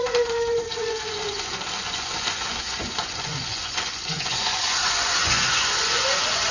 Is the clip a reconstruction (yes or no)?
yes